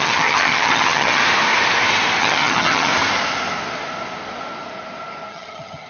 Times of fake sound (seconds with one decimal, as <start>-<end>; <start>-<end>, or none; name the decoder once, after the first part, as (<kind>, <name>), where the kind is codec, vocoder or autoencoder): 0.0-1.2 (vocoder, HiFi-GAN); 2.2-2.9; 5.3-5.9